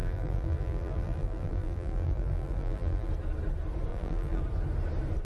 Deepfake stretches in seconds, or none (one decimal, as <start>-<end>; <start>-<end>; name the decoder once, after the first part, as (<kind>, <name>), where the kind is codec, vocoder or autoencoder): 0.0-3.1 (vocoder, BigVGAN v2); 3.9-4.4